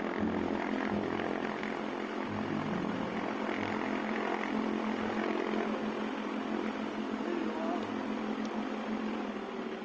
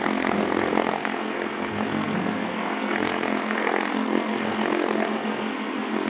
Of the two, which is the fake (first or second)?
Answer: second